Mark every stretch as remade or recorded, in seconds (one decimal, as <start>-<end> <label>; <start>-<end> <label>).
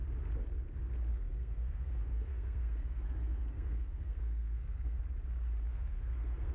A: 0.0-1.1 recorded; 1.1-5.0 remade; 5.0-5.7 recorded; 5.7-6.5 remade